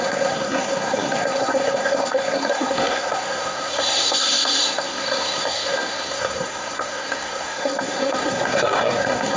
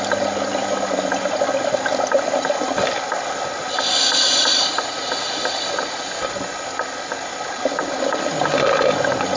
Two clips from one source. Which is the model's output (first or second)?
first